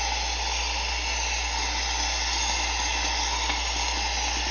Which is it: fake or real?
real